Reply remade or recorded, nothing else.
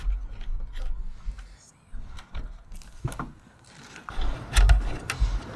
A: recorded